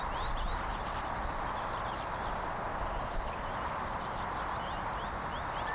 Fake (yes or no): no